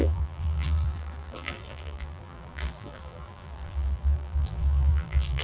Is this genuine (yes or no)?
no